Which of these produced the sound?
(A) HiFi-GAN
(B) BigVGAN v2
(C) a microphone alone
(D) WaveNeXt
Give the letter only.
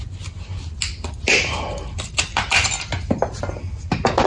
C